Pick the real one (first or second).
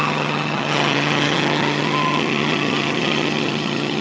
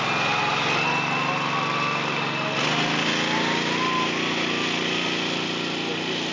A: second